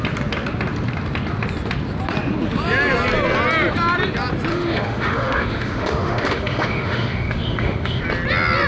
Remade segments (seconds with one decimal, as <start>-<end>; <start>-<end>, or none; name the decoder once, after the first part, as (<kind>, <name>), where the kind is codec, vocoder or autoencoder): 4.5-8.0 (autoencoder, DAC-VAE)